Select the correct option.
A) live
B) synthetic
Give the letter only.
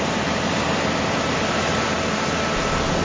A